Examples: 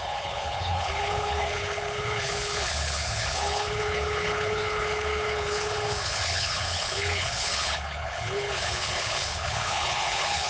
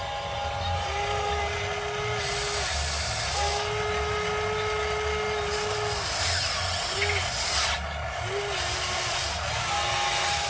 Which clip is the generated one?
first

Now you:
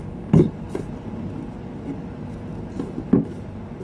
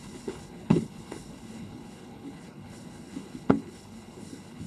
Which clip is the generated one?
second